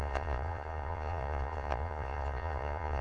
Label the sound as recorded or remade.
remade